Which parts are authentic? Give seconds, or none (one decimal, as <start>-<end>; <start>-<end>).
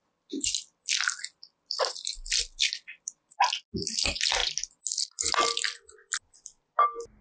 0.0-7.2